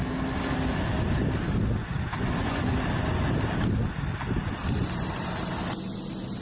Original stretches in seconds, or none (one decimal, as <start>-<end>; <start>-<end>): 0.0-1.8; 2.7-6.4